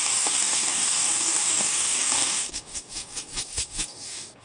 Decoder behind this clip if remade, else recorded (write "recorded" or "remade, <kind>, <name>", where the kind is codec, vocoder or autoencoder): remade, codec, DAC